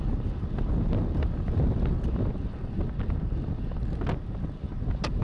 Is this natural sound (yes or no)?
yes